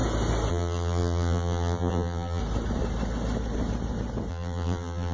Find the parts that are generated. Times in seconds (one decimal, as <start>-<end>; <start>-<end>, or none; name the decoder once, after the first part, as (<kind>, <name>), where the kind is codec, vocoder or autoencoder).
0.5-2.4 (vocoder, BigVGAN v2); 4.3-5.1